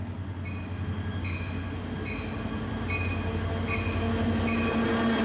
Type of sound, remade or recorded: recorded